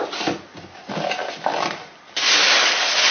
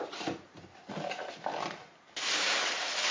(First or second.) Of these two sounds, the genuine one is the first